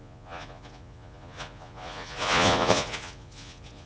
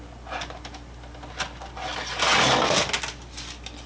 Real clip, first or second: second